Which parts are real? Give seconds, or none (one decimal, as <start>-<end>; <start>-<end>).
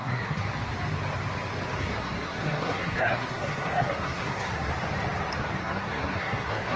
0.4-1.8; 4.7-5.6